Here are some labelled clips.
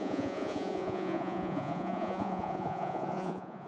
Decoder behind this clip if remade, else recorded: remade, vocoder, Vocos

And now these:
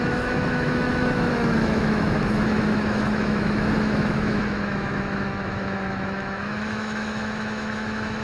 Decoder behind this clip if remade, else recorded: remade, autoencoder, DAC-VAE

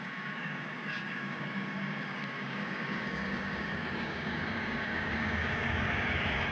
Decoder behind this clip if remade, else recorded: remade, codec, DAC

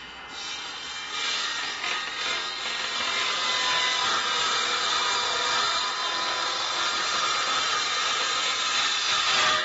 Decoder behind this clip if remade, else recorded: recorded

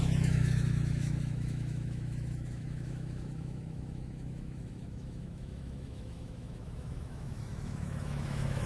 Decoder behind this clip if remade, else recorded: remade, autoencoder, DAC-VAE